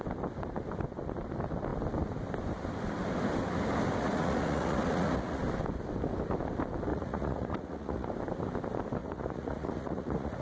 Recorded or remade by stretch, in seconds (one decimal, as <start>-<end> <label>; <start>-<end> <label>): 0.0-4.0 recorded; 4.0-5.4 remade; 5.4-6.9 recorded; 6.9-8.1 remade; 8.1-9.0 recorded; 9.0-10.4 remade